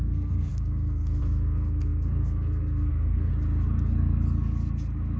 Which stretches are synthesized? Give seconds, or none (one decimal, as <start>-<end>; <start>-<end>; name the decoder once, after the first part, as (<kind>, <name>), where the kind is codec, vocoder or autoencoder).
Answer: 0.0-3.3 (codec, SNAC)